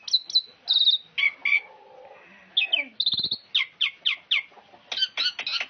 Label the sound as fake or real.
real